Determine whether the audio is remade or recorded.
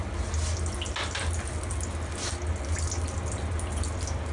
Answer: recorded